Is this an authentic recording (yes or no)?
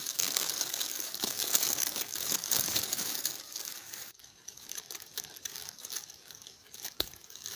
no